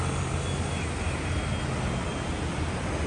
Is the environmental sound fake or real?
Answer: real